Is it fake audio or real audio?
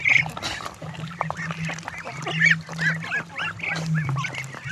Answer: real